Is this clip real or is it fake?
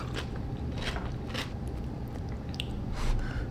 fake